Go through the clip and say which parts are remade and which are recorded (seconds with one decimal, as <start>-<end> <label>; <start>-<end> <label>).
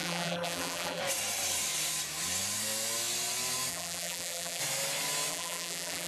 0.0-1.0 remade; 1.0-3.7 recorded; 3.7-4.6 remade; 4.6-5.3 recorded; 5.3-6.1 remade